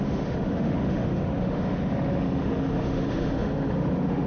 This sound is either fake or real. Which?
fake